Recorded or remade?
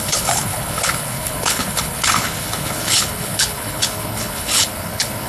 remade